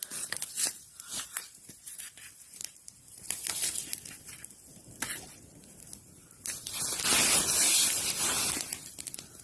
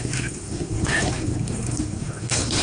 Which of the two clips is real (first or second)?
first